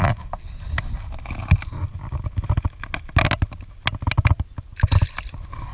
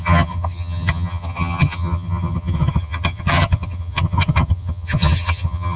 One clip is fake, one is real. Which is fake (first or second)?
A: second